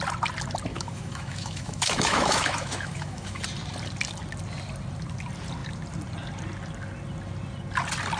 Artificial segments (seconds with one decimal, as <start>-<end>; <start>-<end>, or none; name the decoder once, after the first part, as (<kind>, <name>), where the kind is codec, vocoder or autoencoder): 0.7-3.4 (autoencoder, DAC-VAE)